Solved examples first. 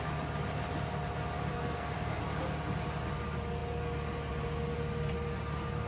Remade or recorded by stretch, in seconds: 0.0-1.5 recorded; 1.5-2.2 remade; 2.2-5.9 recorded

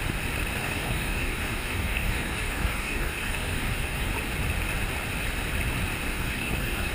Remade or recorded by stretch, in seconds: 0.0-0.6 recorded; 0.6-4.1 remade; 4.1-6.1 recorded; 6.1-6.9 remade

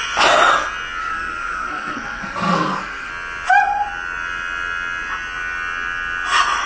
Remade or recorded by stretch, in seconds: 0.0-1.0 recorded; 1.0-3.1 remade; 3.1-6.7 recorded

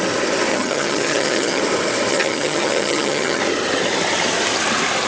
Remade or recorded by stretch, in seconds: 0.0-0.5 recorded; 0.5-1.6 remade; 1.6-2.1 recorded; 2.1-3.4 remade; 3.4-5.1 recorded

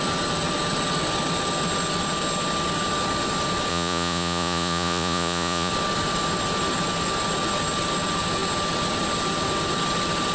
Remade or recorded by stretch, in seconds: 0.0-3.7 recorded; 3.7-5.7 remade; 5.7-10.3 recorded